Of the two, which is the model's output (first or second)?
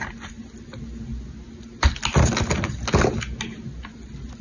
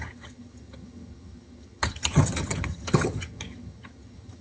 second